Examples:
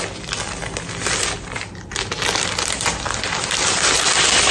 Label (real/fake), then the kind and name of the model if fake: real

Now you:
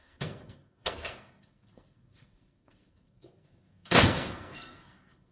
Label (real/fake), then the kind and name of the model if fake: fake, codec, SNAC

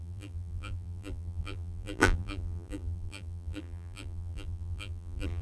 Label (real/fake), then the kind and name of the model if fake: fake, vocoder, BigVGAN v2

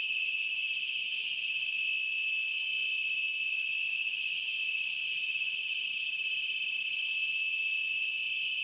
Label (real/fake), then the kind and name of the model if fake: real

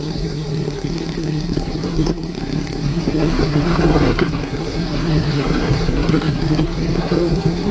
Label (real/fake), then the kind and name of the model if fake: fake, codec, SNAC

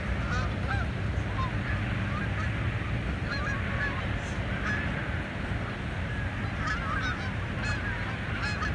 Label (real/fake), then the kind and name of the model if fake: real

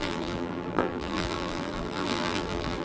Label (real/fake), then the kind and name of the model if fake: fake, vocoder, BigVGAN v2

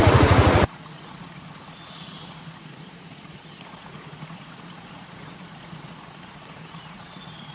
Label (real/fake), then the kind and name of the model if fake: fake, vocoder, Vocos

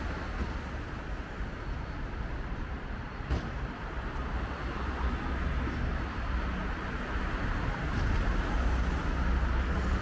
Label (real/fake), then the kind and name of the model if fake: real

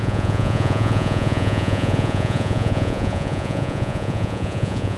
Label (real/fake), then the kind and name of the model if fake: fake, vocoder, Vocos